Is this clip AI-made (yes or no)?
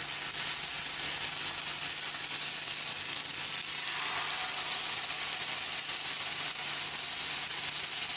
no